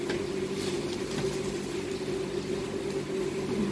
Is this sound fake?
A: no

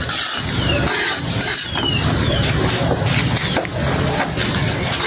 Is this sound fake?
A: no